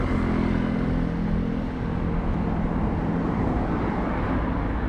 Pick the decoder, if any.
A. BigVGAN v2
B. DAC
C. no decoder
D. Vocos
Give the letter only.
C